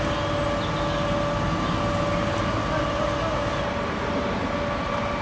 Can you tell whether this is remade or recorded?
recorded